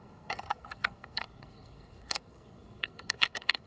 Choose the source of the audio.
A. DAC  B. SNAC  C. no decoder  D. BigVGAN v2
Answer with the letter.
B